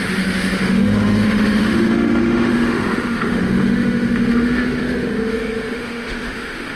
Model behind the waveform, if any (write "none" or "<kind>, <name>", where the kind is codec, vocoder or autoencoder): autoencoder, DAC-VAE